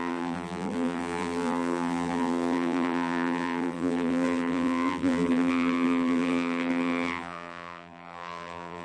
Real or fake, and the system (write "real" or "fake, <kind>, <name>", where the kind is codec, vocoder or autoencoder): fake, vocoder, BigVGAN v2